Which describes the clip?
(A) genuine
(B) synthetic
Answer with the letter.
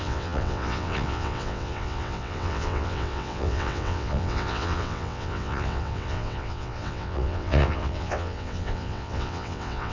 B